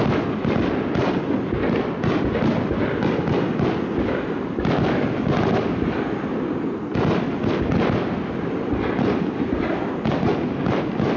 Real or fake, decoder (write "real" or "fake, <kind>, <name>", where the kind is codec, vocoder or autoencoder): real